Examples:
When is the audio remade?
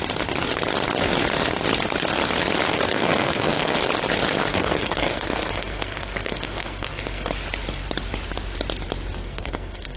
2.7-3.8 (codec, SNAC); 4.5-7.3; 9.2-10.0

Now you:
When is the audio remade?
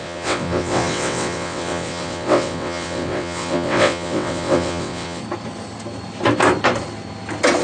0.0-5.2 (vocoder, WaveNeXt)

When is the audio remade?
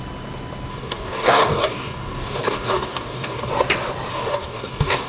0.7-3.5 (codec, DAC); 4.1-5.1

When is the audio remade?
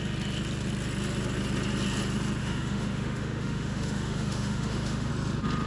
2.4-5.1 (autoencoder, DAC-VAE)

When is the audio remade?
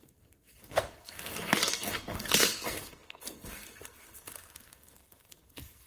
0.0-5.9 (codec, SNAC)